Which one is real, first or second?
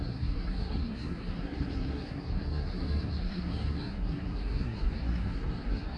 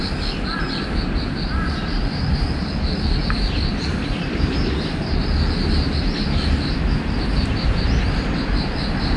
second